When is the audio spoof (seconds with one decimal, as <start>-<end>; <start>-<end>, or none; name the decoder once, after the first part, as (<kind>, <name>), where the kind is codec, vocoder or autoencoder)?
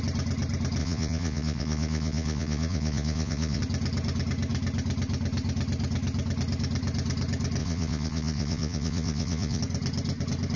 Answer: 0.8-3.6 (vocoder, Vocos); 7.6-9.6